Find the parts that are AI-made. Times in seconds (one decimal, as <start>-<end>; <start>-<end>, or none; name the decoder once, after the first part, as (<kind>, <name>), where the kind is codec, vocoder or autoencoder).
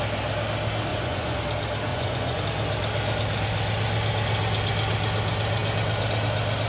0.9-1.4 (vocoder, Vocos); 1.9-2.4